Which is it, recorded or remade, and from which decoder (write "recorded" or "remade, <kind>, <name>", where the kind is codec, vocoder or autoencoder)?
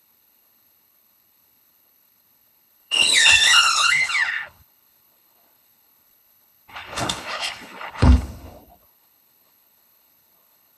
remade, codec, HILCodec